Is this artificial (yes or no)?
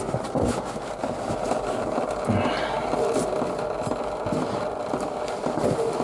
no